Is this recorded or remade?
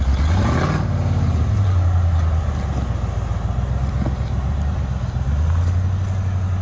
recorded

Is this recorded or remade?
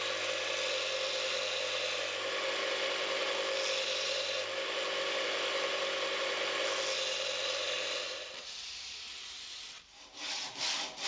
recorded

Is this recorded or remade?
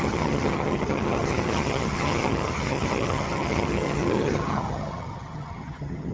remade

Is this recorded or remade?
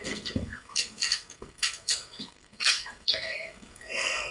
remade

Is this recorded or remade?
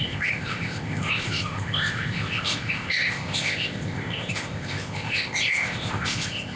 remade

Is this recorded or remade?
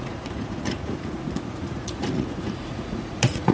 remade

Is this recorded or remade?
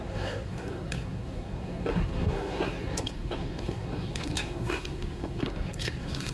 remade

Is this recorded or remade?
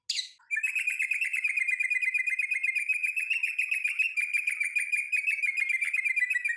recorded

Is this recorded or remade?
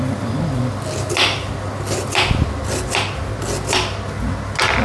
recorded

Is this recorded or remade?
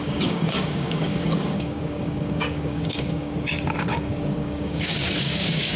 remade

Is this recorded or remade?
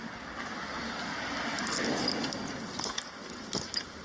recorded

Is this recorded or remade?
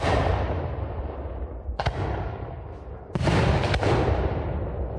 recorded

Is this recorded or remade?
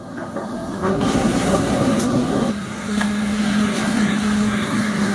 remade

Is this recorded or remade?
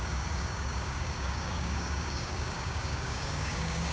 remade